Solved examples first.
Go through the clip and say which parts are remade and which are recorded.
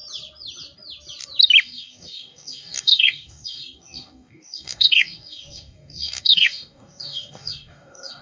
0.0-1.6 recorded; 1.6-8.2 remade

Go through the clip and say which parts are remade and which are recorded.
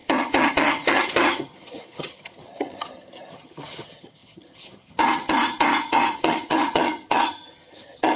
0.0-8.2 remade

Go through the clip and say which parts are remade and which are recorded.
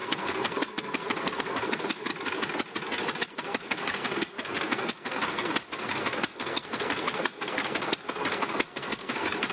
0.0-2.1 remade; 2.1-3.2 recorded; 3.2-9.5 remade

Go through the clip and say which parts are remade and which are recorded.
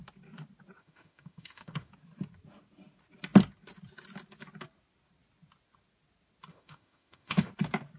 0.0-0.8 recorded; 0.8-1.9 remade; 1.9-6.5 recorded; 6.5-7.5 remade; 7.5-8.0 recorded